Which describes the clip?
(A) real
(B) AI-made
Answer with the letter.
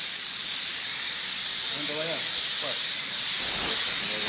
A